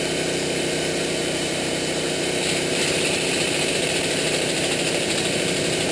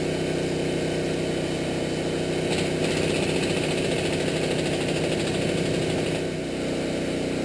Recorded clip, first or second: second